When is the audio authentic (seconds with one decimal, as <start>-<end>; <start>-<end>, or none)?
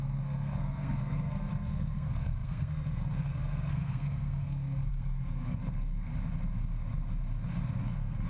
6.1-7.8